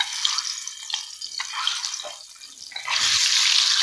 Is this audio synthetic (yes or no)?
no